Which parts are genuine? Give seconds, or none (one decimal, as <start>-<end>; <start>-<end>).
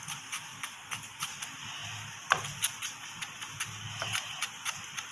0.0-5.1